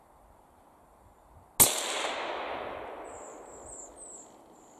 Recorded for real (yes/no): yes